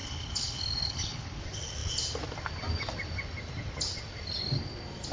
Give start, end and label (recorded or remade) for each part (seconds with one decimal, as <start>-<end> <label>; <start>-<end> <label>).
0.0-1.4 remade; 1.4-5.1 recorded